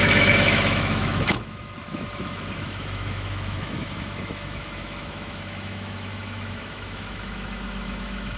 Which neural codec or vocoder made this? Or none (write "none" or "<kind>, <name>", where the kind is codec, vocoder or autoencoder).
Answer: autoencoder, DAC-VAE